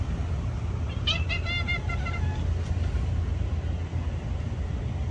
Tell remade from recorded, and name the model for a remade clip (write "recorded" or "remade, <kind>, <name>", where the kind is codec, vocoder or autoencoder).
recorded